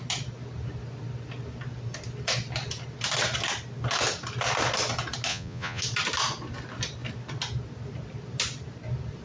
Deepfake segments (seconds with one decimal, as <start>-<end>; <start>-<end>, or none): 5.3-5.8